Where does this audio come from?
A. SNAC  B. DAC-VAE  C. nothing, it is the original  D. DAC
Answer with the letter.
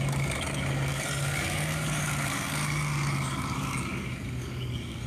D